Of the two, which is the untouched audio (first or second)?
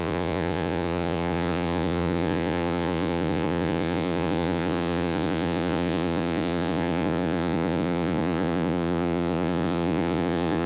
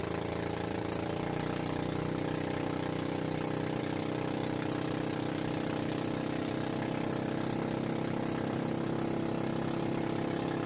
second